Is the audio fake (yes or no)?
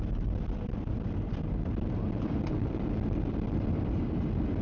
no